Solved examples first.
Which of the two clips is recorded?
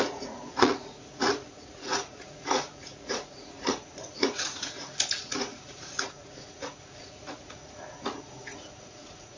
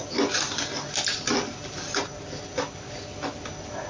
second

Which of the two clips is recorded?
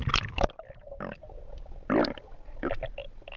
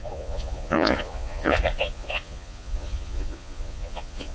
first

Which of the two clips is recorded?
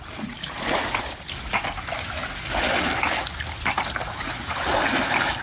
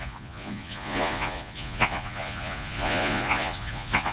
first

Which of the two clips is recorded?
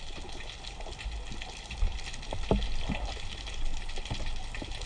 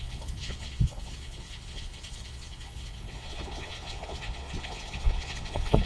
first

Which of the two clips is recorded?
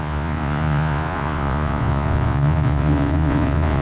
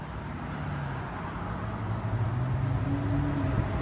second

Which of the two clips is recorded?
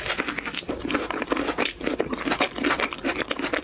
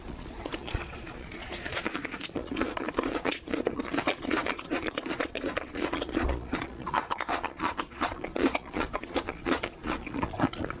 first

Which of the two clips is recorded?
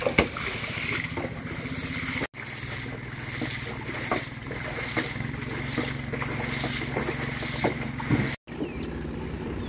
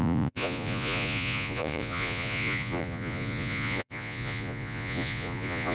first